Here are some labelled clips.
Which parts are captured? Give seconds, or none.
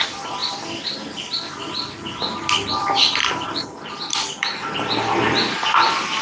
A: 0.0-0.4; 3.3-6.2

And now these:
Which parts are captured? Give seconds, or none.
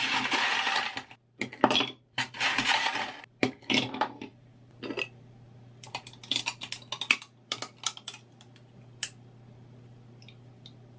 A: 0.0-11.0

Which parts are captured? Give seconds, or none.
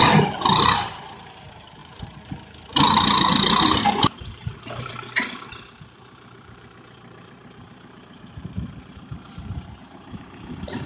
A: none